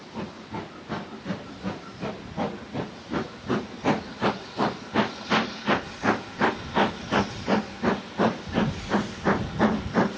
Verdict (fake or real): real